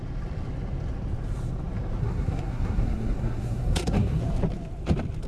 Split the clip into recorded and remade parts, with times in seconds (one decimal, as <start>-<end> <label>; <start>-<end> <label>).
0.0-2.0 recorded; 2.0-4.2 remade; 4.2-5.3 recorded